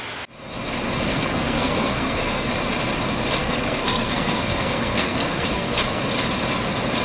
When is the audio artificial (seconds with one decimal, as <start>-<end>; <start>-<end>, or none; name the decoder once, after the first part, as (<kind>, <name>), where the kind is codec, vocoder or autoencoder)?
1.1-2.5 (codec, SNAC); 3.4-6.0